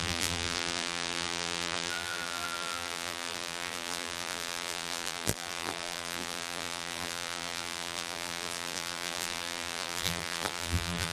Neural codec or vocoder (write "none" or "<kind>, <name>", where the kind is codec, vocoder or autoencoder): vocoder, BigVGAN v2